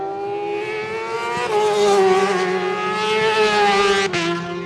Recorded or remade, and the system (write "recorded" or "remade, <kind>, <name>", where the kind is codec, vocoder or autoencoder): recorded